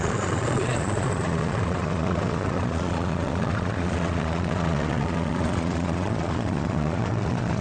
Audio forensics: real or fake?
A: fake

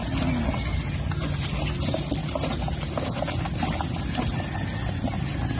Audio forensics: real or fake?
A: real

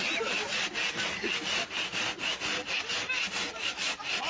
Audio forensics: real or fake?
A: real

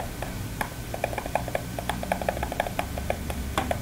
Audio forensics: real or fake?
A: fake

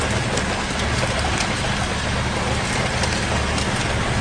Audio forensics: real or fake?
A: real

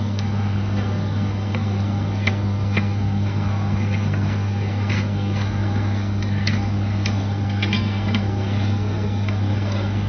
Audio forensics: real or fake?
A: fake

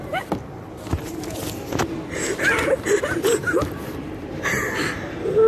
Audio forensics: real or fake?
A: real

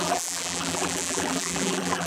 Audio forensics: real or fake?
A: fake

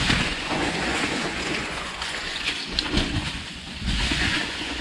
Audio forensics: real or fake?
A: fake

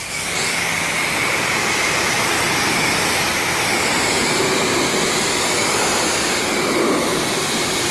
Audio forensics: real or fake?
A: real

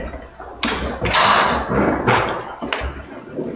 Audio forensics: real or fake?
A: real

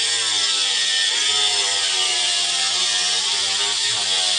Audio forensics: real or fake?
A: real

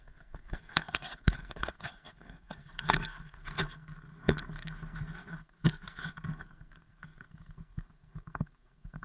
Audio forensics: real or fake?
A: fake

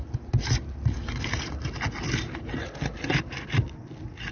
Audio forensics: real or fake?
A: real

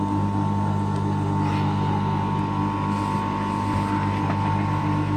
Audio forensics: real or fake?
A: real